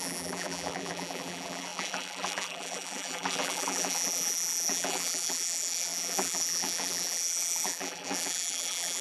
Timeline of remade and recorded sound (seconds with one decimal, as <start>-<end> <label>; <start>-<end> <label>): 0.0-9.0 remade